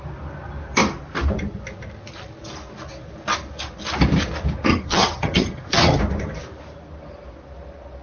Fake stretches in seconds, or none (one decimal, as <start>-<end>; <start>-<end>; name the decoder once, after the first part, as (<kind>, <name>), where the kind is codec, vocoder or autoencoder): 4.7-6.0 (vocoder, HiFi-GAN)